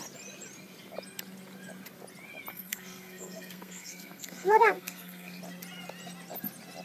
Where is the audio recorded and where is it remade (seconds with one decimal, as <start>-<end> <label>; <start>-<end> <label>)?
0.0-2.5 recorded; 2.5-5.4 remade; 5.4-6.8 recorded